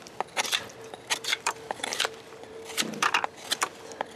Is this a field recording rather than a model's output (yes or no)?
no